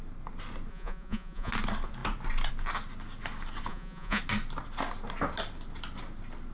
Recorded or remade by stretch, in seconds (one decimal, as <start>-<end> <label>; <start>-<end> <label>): 0.0-0.7 recorded; 0.7-1.5 remade; 1.5-3.7 recorded; 3.7-4.2 remade; 4.2-6.5 recorded